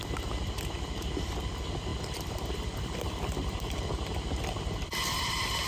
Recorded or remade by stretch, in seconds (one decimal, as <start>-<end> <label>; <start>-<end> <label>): 0.0-1.9 recorded; 1.9-5.3 remade; 5.3-5.7 recorded